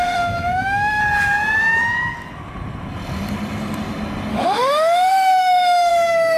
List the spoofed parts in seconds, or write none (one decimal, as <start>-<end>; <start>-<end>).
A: 0.0-1.0; 4.3-6.4

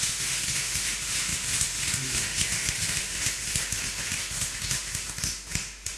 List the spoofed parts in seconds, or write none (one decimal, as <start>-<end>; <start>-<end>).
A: 0.0-6.0

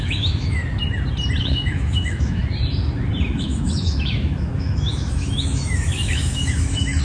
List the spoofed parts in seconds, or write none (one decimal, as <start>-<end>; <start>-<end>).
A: 0.0-0.6; 1.4-2.4; 3.4-7.0